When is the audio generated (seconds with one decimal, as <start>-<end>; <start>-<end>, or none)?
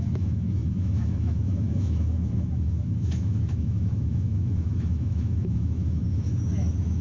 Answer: 0.0-7.0